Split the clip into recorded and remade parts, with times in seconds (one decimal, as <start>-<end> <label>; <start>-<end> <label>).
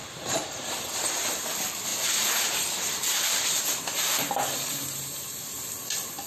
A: 0.0-1.4 remade; 1.4-1.9 recorded; 1.9-5.7 remade; 5.7-6.3 recorded